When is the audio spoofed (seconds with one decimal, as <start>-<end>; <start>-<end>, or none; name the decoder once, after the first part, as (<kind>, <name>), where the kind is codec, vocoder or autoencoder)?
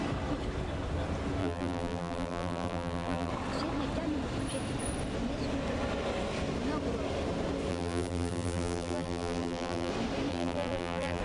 1.4-3.3 (vocoder, BigVGAN v2); 7.7-9.9; 10.3-11.2